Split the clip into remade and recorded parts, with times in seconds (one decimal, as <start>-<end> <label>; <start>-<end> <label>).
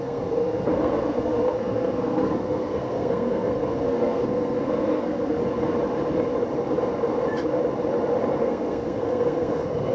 0.0-5.4 remade; 5.4-8.4 recorded; 8.4-9.9 remade